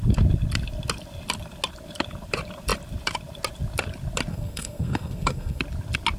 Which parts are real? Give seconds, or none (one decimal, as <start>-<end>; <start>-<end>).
0.0-4.3; 5.6-6.2